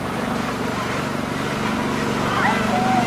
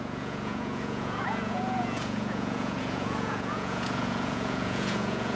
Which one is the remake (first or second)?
second